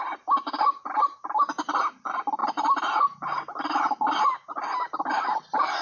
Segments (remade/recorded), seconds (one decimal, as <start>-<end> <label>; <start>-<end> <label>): 0.0-5.8 recorded